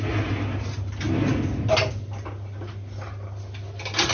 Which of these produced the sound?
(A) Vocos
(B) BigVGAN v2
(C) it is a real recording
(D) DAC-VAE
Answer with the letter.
C